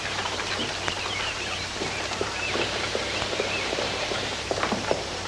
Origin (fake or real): fake